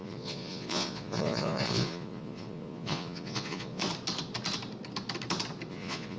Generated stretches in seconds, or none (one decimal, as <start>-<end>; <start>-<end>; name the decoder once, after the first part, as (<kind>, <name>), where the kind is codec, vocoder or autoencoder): 0.0-3.8 (vocoder, Vocos); 5.7-6.2